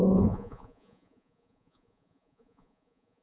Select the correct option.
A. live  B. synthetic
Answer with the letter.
B